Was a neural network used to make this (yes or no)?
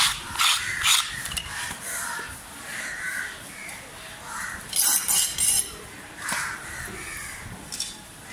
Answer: no